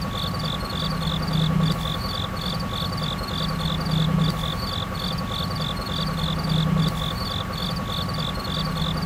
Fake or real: real